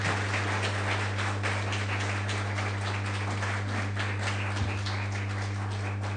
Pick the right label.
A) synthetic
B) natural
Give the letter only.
B